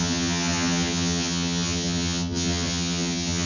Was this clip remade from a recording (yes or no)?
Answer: yes